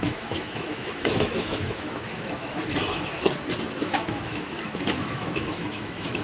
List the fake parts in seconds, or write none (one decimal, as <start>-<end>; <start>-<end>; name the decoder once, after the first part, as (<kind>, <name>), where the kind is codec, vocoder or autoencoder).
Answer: 0.0-2.6 (autoencoder, DAC-VAE); 3.8-6.2